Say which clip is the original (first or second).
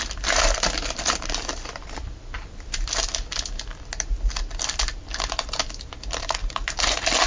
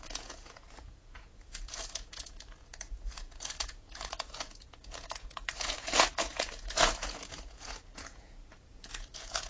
first